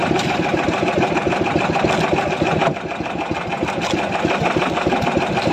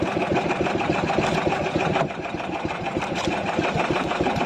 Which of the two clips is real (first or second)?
first